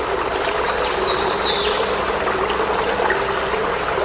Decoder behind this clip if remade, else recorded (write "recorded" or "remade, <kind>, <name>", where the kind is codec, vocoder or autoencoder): recorded